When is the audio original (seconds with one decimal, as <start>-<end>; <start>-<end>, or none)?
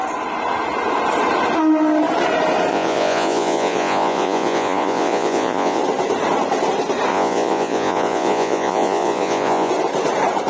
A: 0.0-2.7; 5.8-7.1; 9.7-10.5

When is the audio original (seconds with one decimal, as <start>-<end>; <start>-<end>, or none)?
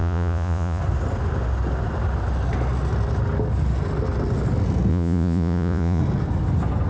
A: 0.8-4.9; 6.0-6.9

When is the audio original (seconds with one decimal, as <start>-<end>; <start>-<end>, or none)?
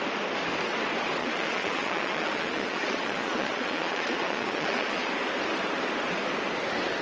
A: 0.0-1.2; 5.1-7.0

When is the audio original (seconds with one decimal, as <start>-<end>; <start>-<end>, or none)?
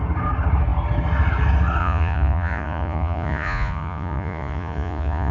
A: 0.0-1.8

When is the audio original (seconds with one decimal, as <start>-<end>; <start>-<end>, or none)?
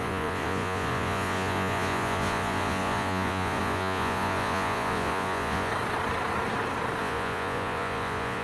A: 5.7-7.0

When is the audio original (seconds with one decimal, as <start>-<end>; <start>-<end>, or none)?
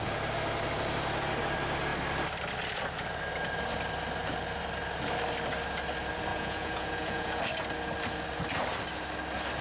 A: 0.0-6.3; 7.4-9.6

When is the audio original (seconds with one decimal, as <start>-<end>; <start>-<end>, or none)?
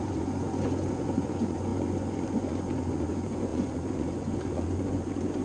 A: none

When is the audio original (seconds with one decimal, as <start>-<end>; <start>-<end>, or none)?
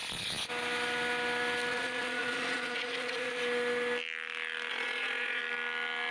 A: 0.5-1.7; 3.4-4.7; 5.4-6.1